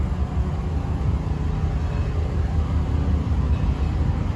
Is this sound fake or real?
real